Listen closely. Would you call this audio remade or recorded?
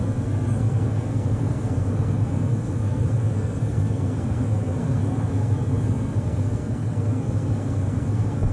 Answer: remade